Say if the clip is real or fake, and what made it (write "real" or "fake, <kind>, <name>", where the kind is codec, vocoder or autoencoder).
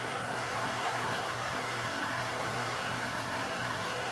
fake, codec, SNAC